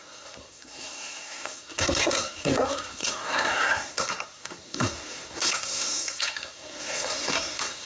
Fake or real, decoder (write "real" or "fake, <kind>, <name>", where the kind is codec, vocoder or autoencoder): fake, codec, SNAC